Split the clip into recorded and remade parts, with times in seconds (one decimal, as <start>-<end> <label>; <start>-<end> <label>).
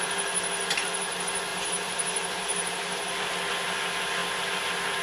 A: 0.0-1.5 recorded; 1.5-3.3 remade; 3.3-5.0 recorded